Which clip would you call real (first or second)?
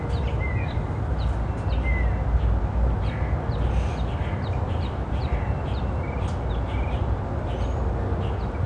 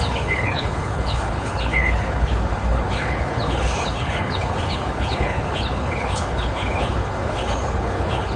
first